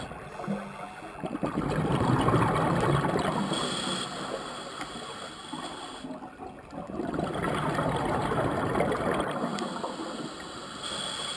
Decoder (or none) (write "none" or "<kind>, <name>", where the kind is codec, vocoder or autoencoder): none